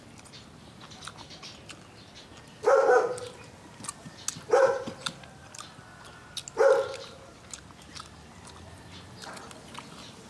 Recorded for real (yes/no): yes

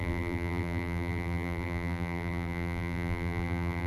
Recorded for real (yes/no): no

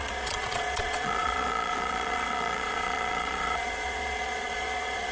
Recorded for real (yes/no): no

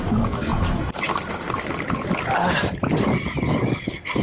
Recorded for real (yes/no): yes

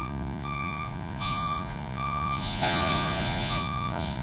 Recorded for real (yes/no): no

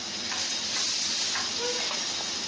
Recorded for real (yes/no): yes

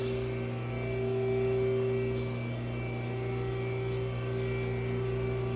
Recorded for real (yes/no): yes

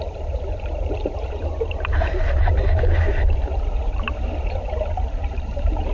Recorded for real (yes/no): no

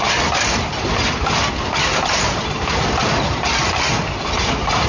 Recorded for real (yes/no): yes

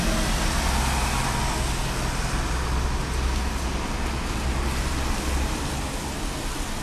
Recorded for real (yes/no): yes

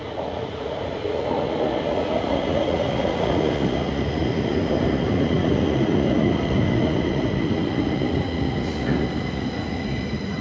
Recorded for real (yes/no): no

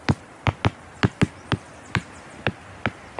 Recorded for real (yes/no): yes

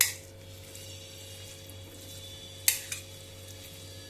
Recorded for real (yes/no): yes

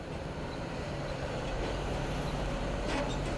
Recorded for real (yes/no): no